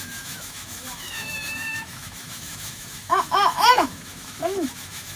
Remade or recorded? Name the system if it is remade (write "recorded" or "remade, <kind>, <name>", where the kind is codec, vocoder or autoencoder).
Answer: remade, autoencoder, DAC-VAE